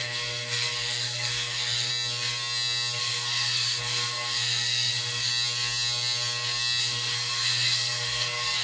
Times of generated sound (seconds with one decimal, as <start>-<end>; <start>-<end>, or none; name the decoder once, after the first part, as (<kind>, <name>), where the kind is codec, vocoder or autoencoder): 0.0-1.9 (codec, SNAC); 3.0-5.3; 6.8-8.6